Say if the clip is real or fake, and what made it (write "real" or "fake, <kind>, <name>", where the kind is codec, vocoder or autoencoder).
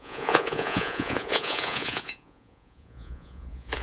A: fake, vocoder, Vocos